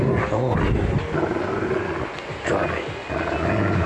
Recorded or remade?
recorded